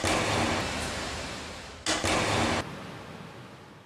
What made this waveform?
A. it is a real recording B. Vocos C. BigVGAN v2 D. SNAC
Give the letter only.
A